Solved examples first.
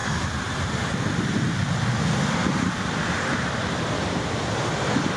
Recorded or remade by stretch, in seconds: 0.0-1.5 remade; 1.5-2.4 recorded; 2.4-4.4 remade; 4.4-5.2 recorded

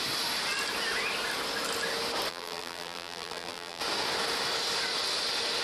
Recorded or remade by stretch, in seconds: 0.0-2.3 recorded; 2.3-3.8 remade; 3.8-5.6 recorded

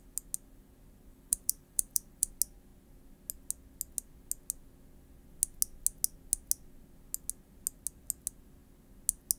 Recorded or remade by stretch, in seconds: 0.0-1.1 recorded; 1.1-2.3 remade; 2.3-9.4 recorded

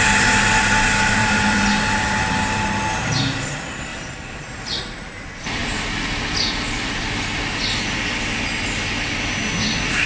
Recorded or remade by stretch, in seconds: 0.0-1.2 recorded; 1.2-2.2 remade; 2.2-3.9 recorded; 3.9-4.5 remade; 4.5-10.1 recorded

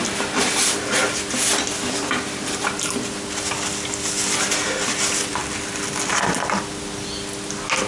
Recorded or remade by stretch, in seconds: 0.0-7.9 recorded

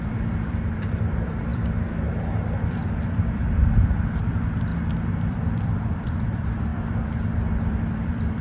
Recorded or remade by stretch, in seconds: 0.0-4.7 remade; 4.7-5.3 recorded; 5.3-8.4 remade

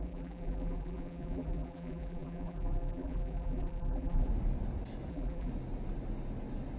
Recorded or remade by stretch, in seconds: 0.0-4.3 remade; 4.3-5.1 recorded; 5.1-5.5 remade; 5.5-6.8 recorded

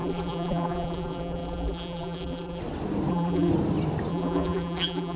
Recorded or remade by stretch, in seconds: 0.0-2.6 remade; 2.6-3.1 recorded; 3.1-3.5 remade; 3.5-4.1 recorded; 4.1-5.2 remade